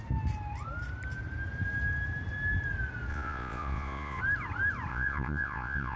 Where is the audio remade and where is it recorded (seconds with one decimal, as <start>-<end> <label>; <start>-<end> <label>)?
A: 0.0-3.1 recorded; 3.1-4.2 remade; 4.2-4.9 recorded; 4.9-6.0 remade